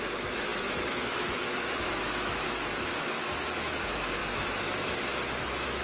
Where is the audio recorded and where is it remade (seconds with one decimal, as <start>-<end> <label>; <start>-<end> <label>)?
0.0-5.8 remade